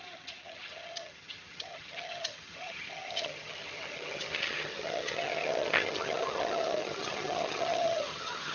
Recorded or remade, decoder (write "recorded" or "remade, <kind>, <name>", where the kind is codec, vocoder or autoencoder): remade, vocoder, HiFi-GAN